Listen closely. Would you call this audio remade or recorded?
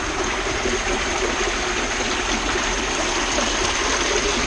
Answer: recorded